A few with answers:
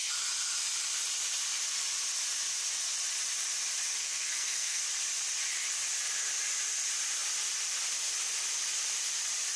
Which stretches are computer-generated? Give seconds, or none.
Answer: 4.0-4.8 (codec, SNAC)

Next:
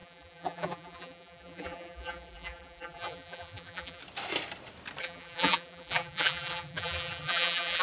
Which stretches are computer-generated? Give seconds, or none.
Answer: 0.0-4.0 (vocoder, BigVGAN v2); 5.0-7.8

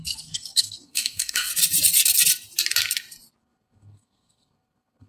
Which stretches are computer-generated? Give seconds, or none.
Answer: 0.0-1.5 (codec, SNAC); 3.4-5.1

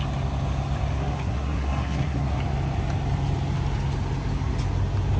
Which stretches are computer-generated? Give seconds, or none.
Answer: 1.0-2.4 (codec, SNAC)

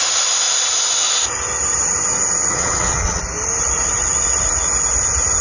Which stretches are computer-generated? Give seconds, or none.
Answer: 2.5-3.2 (vocoder, WaveNeXt)

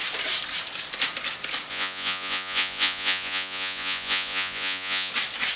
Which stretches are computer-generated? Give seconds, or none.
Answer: 1.7-5.1 (vocoder, Vocos)

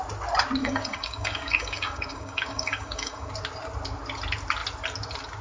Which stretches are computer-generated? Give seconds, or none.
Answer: 0.6-3.3 (codec, DAC)